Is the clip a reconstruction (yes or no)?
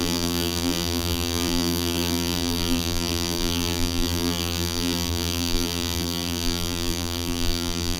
yes